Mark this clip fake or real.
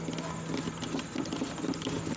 real